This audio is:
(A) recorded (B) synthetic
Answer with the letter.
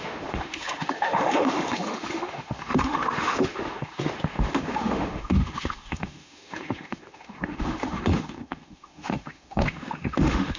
B